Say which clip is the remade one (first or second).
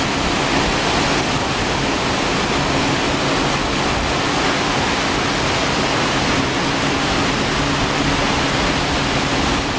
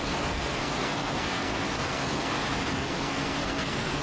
second